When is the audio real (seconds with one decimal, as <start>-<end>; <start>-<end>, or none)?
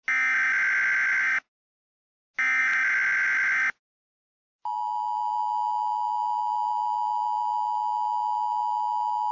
0.0-9.3